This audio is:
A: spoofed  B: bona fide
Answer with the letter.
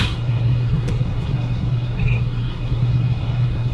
A